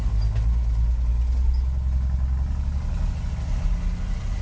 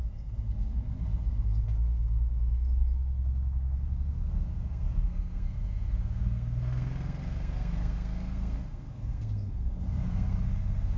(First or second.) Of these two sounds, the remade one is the second